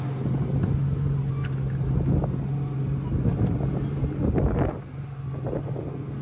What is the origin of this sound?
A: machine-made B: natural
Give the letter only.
B